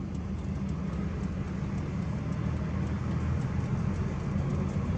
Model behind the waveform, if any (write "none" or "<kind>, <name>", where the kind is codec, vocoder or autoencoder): none